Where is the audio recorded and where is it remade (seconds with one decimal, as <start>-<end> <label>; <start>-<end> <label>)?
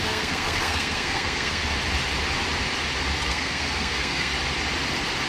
0.0-1.6 remade; 1.6-3.2 recorded; 3.2-4.3 remade; 4.3-5.3 recorded